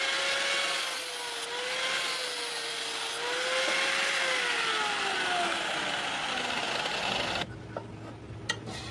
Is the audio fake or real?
real